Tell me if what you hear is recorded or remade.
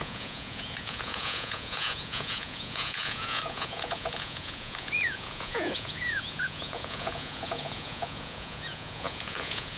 remade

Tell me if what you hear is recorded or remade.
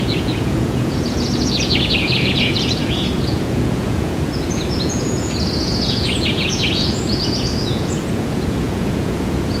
remade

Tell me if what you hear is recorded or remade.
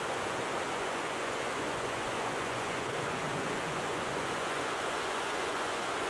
remade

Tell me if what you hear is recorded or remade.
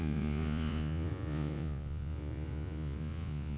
remade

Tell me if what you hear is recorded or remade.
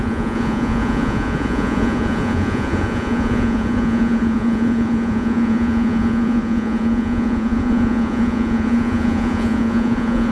remade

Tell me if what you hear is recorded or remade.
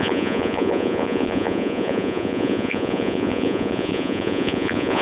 remade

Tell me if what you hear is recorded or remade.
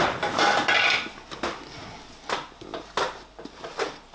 recorded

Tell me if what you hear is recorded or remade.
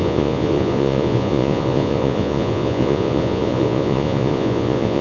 remade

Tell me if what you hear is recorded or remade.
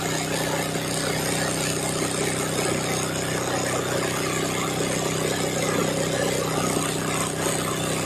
recorded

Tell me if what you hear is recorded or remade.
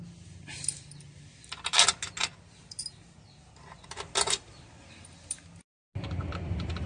recorded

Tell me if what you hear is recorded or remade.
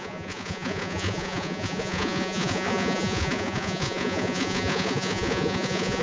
remade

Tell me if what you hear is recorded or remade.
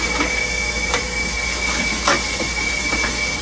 recorded